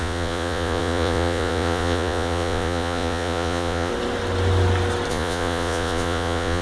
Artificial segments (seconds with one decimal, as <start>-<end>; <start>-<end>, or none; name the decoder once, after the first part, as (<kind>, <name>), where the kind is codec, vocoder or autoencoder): 0.0-3.9 (vocoder, Vocos); 5.1-6.6